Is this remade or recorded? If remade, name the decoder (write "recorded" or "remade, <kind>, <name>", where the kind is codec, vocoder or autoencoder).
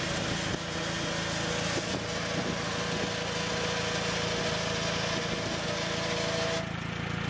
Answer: recorded